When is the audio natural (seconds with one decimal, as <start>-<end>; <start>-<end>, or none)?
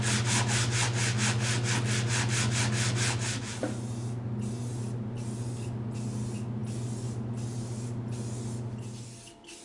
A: 0.0-6.6